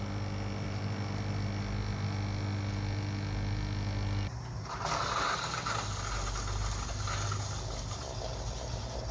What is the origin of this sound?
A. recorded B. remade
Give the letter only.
A